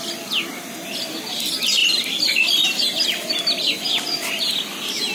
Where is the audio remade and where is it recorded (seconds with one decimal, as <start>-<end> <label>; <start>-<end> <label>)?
0.0-1.8 recorded; 1.8-4.4 remade; 4.4-5.1 recorded